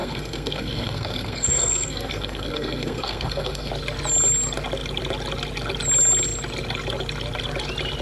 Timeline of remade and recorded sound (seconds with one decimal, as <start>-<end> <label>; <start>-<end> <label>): 0.0-3.7 remade; 3.7-8.0 recorded